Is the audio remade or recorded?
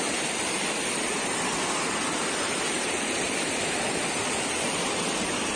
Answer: recorded